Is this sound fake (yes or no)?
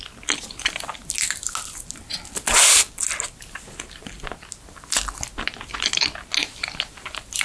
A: no